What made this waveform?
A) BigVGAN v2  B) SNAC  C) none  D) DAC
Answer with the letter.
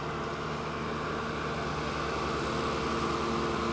C